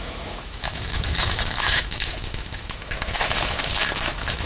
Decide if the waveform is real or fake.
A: fake